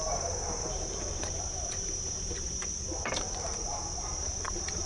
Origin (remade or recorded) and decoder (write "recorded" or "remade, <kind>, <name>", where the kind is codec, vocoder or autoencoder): remade, vocoder, BigVGAN v2